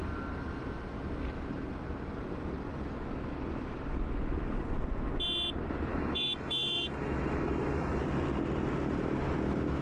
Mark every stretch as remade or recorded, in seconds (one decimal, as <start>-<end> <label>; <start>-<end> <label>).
0.0-5.9 recorded; 5.9-8.0 remade; 8.0-9.8 recorded